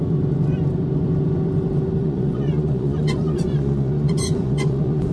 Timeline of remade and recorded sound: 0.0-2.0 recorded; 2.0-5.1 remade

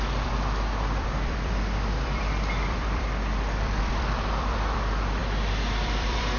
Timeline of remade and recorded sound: 0.0-6.4 remade

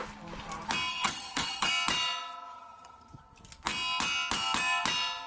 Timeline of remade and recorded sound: 0.0-0.9 recorded; 0.9-1.7 remade; 1.7-2.5 recorded; 2.5-3.2 remade; 3.2-5.3 recorded

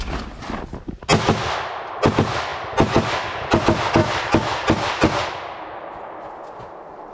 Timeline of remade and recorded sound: 0.0-2.5 recorded; 2.5-3.6 remade; 3.6-4.0 recorded; 4.0-5.6 remade; 5.6-7.1 recorded

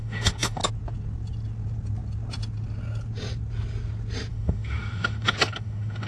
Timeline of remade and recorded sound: 0.0-0.6 remade; 0.6-4.3 recorded; 4.3-6.1 remade

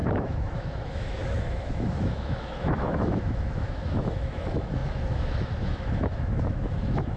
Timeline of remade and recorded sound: 0.0-7.2 remade

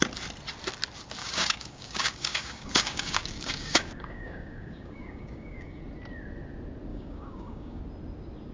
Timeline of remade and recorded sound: 0.0-1.2 recorded; 1.2-5.8 remade; 5.8-6.9 recorded; 6.9-7.8 remade; 7.8-8.5 recorded

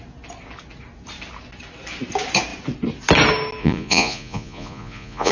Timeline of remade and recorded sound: 0.0-3.6 recorded; 3.6-5.3 remade